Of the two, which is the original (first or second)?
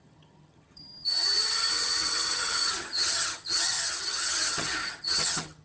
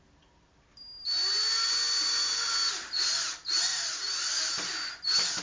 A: second